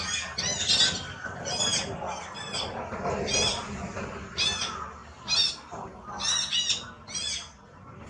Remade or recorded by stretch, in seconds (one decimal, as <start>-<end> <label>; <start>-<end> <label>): 0.0-8.1 recorded